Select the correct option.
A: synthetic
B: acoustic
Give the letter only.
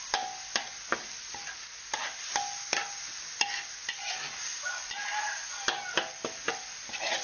B